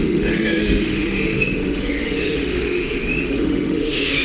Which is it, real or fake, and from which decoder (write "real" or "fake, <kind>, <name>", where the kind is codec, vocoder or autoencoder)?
fake, autoencoder, DAC-VAE